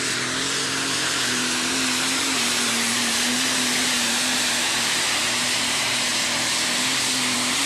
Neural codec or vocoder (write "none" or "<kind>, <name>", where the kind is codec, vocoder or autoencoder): vocoder, BigVGAN v2